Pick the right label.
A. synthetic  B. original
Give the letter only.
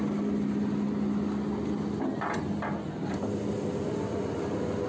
B